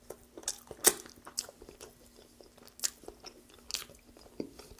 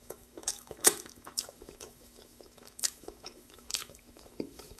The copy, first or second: second